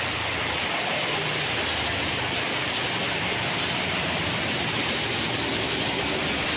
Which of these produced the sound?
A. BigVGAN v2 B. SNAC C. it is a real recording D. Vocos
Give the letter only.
A